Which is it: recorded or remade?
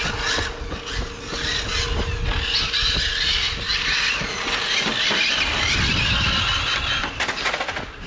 recorded